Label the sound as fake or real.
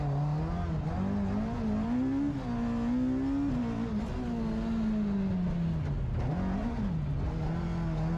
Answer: real